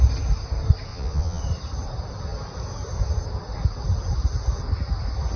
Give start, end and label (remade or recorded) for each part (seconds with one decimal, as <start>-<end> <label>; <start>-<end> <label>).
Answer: 0.0-0.9 recorded; 0.9-1.4 remade; 1.4-5.4 recorded